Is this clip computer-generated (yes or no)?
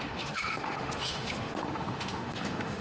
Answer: yes